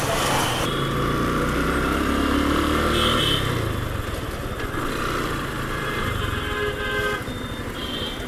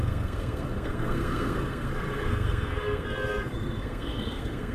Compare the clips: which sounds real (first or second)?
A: first